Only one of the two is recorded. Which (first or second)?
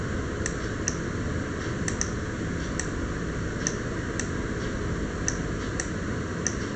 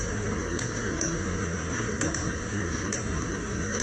first